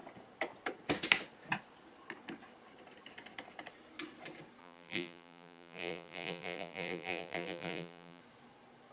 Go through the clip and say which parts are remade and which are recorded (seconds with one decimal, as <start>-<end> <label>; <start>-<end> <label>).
0.0-4.6 recorded; 4.6-8.2 remade; 8.2-8.9 recorded